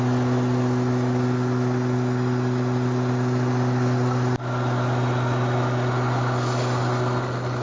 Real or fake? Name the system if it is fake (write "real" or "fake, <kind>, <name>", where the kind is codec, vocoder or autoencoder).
real